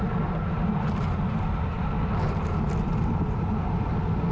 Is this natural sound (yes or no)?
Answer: yes